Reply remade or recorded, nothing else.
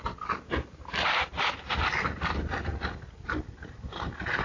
recorded